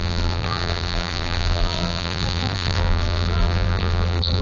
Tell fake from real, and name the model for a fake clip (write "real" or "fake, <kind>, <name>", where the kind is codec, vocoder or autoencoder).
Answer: fake, vocoder, BigVGAN v2